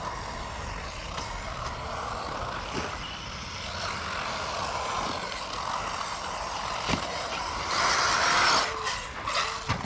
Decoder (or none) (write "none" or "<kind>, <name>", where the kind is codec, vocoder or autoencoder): none